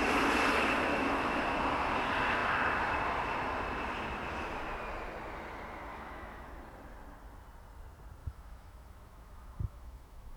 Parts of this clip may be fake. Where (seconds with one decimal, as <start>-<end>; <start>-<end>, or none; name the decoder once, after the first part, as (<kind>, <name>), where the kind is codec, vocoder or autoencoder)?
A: 0.9-1.4 (autoencoder, DAC-VAE); 5.9-6.5; 8.2-10.4